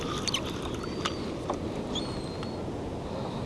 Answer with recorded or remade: recorded